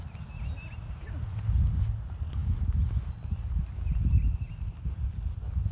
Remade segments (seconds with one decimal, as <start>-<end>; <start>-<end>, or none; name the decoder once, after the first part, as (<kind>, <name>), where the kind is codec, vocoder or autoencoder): none